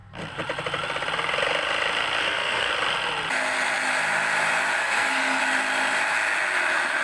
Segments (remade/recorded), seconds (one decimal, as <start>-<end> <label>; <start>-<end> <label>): 0.0-2.2 recorded; 2.2-2.7 remade; 2.7-4.8 recorded; 4.8-5.4 remade; 5.4-7.0 recorded